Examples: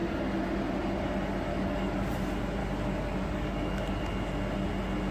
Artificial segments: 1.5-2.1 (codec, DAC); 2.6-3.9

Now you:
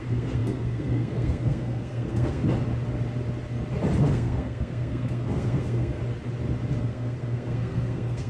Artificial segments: 0.0-2.4 (codec, SNAC); 4.0-6.0; 6.8-8.3